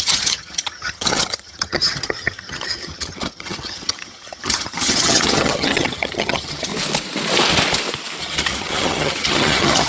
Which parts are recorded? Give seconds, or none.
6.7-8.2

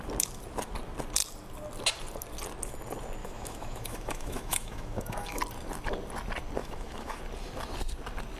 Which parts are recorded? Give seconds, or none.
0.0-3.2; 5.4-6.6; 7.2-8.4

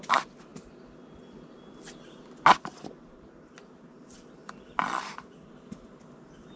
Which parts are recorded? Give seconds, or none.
0.0-6.6

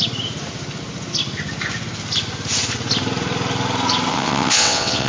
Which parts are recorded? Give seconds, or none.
0.0-4.1

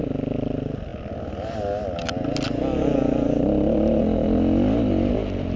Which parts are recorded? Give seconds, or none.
0.0-5.6

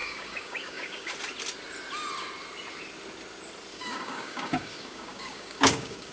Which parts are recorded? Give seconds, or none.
1.1-3.7